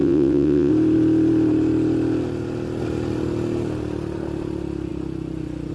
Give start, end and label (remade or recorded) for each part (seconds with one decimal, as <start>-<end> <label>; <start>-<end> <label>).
0.0-0.7 remade; 0.7-5.7 recorded